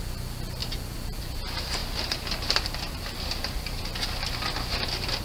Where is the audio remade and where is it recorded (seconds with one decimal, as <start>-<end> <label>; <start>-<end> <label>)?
0.0-5.2 recorded